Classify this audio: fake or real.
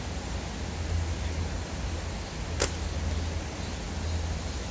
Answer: real